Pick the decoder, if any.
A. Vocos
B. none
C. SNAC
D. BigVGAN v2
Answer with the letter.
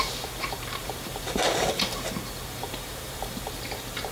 D